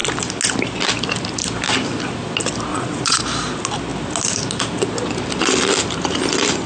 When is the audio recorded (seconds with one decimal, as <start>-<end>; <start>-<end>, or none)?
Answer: 0.0-2.7; 3.2-6.7